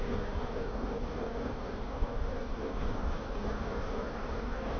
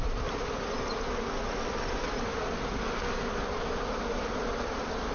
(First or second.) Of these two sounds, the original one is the second